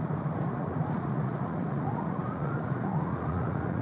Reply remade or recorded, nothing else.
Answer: remade